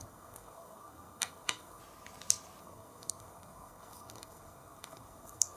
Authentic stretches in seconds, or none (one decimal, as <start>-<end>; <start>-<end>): 1.8-2.6